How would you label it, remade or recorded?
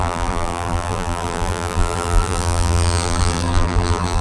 remade